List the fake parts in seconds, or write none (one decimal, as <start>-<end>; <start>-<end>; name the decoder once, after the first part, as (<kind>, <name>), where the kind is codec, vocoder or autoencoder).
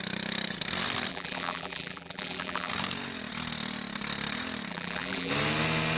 1.1-2.7 (vocoder, BigVGAN v2); 4.7-5.3